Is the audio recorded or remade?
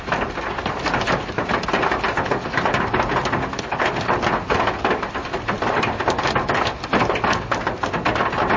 recorded